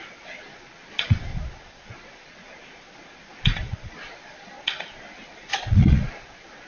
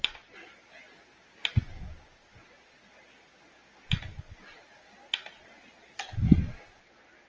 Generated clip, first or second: first